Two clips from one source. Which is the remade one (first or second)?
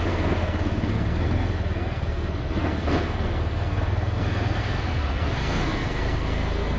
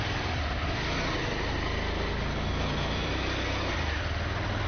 first